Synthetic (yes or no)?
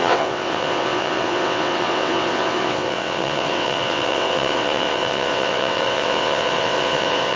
yes